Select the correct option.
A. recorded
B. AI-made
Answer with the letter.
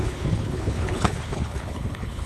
B